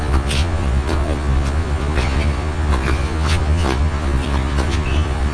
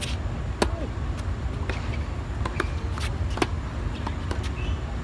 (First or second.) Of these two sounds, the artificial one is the first